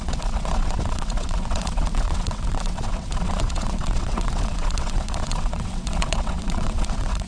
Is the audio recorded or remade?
remade